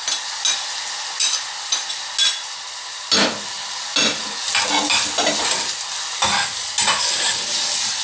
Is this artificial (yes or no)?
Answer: no